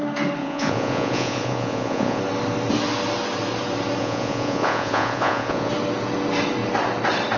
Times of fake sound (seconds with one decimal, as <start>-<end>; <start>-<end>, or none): 0.4-2.2; 4.0-5.7